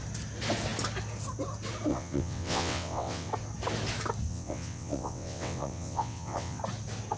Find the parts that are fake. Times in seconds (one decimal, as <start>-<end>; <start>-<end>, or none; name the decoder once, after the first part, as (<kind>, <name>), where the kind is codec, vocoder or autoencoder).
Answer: 1.9-3.3 (vocoder, WaveNeXt); 4.3-6.6